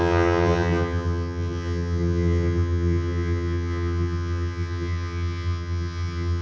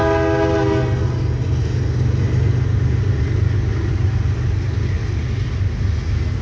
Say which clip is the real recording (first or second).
second